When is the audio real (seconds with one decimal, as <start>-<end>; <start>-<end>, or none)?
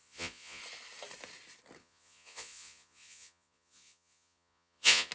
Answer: 0.6-1.8